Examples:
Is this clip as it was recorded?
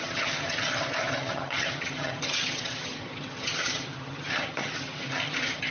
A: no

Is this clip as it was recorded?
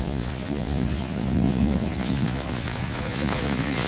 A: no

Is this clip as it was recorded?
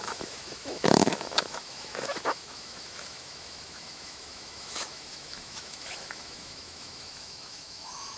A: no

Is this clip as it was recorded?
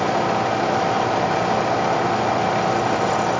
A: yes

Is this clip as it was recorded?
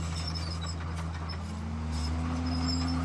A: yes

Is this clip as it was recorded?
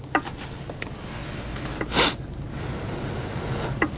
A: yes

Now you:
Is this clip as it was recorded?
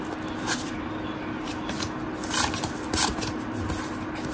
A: yes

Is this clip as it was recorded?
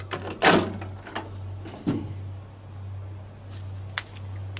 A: yes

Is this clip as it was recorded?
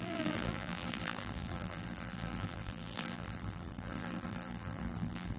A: no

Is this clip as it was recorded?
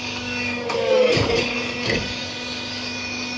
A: no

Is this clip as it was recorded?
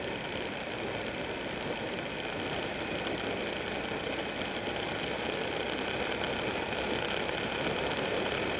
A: yes